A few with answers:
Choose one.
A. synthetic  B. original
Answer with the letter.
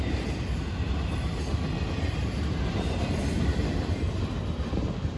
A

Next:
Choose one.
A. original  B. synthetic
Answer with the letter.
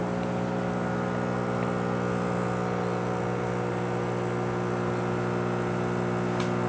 A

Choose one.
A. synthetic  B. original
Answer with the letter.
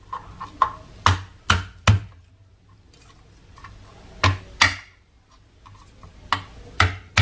B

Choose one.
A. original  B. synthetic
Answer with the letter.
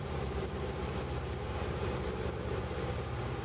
B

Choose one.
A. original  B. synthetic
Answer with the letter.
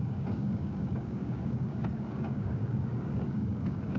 B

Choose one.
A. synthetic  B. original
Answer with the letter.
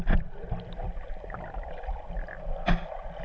B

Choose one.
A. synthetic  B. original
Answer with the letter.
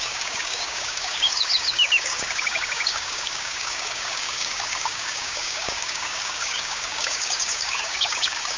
A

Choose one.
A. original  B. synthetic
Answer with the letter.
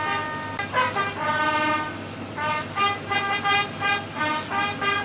A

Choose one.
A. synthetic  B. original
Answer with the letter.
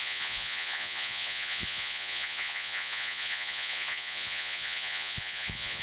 A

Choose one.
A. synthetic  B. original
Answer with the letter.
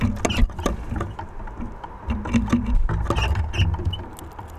B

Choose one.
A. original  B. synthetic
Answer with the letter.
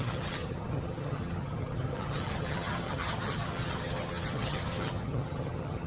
B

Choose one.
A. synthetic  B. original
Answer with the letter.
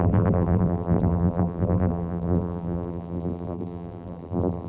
A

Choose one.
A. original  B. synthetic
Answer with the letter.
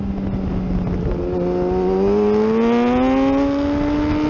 A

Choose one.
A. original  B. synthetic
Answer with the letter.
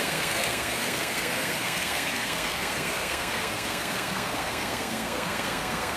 B